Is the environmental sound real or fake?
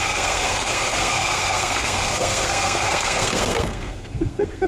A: fake